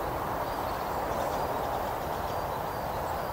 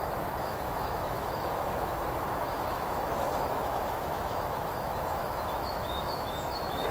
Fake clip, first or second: second